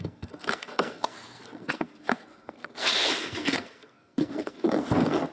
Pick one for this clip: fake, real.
fake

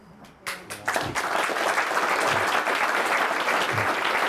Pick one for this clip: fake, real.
real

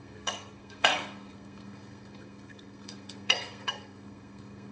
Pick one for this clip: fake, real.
fake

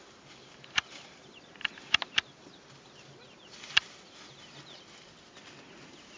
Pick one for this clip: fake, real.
real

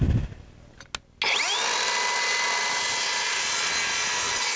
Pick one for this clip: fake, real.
real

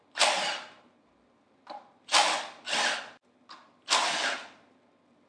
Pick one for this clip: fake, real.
real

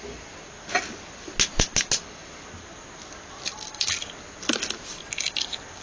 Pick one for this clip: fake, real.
real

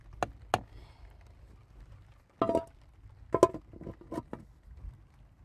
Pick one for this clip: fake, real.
real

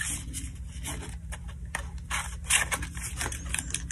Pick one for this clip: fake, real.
real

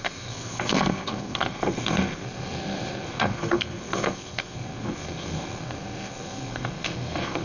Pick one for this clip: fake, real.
fake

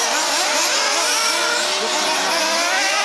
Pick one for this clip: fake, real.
real